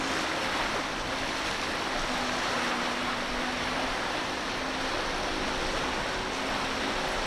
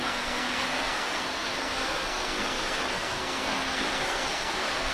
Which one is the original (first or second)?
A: first